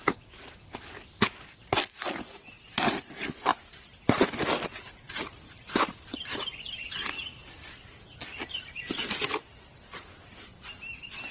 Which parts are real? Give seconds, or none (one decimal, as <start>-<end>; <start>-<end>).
0.0-11.3